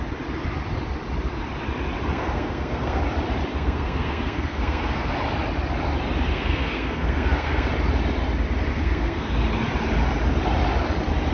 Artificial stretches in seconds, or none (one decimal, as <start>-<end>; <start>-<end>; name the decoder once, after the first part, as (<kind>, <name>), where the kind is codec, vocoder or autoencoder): 2.1-3.0 (codec, SNAC); 3.5-5.1; 6.3-7.7; 8.7-9.3